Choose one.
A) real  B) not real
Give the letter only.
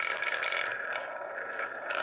A